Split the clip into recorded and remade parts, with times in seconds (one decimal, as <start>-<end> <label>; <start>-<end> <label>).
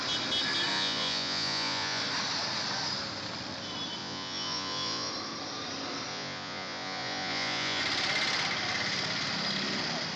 0.0-0.7 recorded; 0.7-2.0 remade; 2.0-4.0 recorded; 4.0-5.1 remade; 5.1-6.1 recorded; 6.1-7.8 remade; 7.8-10.2 recorded